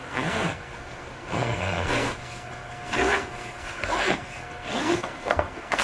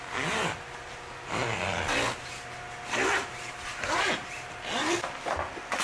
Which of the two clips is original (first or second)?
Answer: second